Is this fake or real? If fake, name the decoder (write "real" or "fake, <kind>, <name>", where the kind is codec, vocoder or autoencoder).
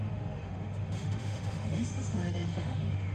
fake, autoencoder, DAC-VAE